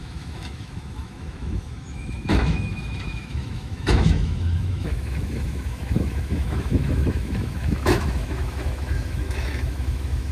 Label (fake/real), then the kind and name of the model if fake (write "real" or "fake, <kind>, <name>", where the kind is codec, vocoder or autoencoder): fake, autoencoder, DAC-VAE